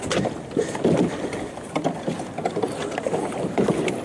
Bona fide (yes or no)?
yes